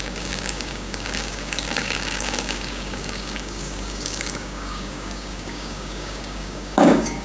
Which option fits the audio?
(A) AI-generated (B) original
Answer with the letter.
A